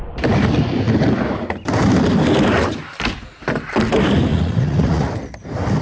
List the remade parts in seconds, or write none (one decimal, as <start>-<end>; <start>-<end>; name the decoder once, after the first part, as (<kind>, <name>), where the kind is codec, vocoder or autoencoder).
4.3-5.1 (vocoder, Vocos)